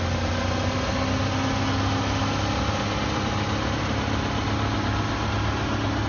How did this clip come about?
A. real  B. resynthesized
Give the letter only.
A